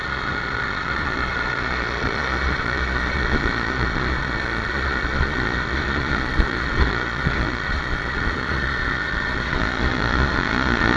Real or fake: fake